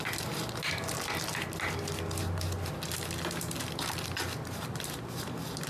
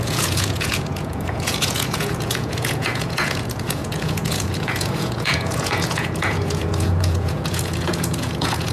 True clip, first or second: first